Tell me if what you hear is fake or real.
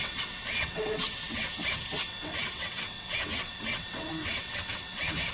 fake